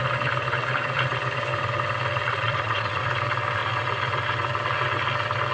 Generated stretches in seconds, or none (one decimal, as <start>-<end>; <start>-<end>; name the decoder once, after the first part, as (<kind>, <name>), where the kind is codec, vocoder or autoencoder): 2.3-3.0 (vocoder, Vocos)